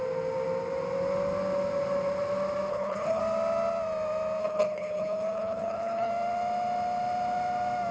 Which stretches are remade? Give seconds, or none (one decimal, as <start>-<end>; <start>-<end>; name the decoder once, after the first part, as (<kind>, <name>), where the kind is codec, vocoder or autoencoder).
2.7-3.2 (codec, HILCodec); 4.4-6.1